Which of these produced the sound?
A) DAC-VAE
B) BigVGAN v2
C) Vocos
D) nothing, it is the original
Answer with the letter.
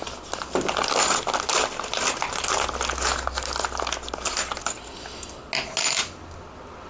D